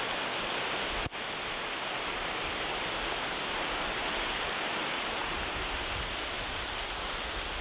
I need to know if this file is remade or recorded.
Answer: recorded